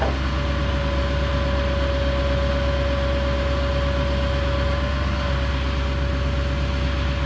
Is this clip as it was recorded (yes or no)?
yes